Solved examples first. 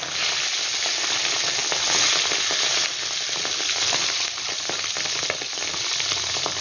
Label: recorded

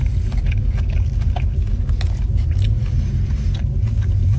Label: recorded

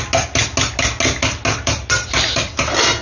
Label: recorded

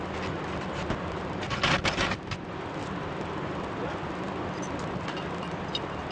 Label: recorded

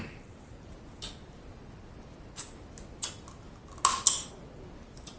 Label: recorded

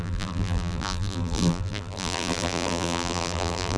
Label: remade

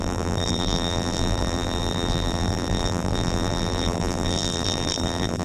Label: remade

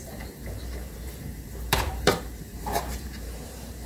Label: remade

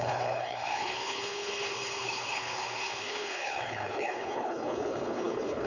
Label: remade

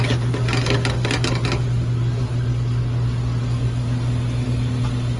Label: recorded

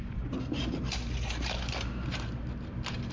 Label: recorded